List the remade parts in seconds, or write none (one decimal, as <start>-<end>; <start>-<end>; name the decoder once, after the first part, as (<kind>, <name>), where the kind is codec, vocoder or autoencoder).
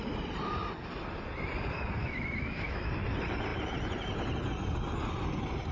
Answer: 2.0-2.9 (autoencoder, DAC-VAE)